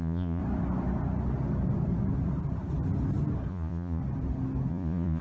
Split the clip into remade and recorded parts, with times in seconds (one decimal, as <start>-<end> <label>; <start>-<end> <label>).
0.0-0.4 remade; 0.4-3.5 recorded; 3.5-4.0 remade; 4.0-4.7 recorded; 4.7-5.2 remade